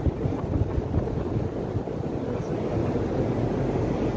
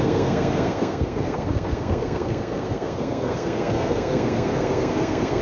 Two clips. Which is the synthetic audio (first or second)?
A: second